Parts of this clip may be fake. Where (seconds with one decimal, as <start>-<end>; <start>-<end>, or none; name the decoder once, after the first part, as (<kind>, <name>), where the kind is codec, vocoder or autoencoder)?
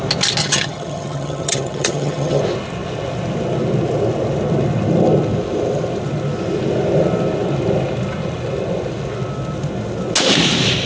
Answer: 0.4-2.4 (vocoder, HiFi-GAN)